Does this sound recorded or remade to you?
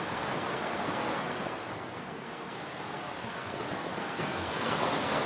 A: remade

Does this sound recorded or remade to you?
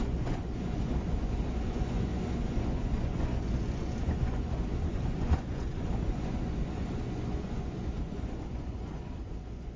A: remade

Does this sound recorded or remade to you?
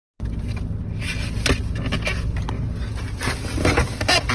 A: recorded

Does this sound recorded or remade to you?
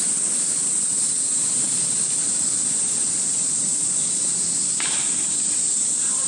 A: remade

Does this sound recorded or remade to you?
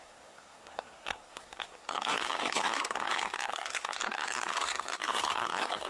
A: remade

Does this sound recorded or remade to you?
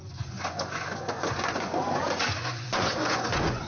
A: remade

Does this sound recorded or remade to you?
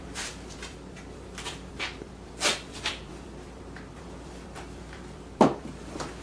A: remade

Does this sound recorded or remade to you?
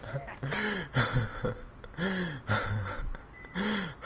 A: recorded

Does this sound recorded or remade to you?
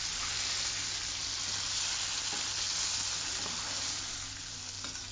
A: recorded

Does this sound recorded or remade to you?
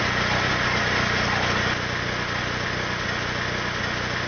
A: recorded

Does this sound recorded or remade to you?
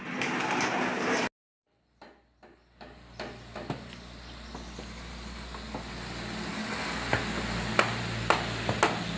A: recorded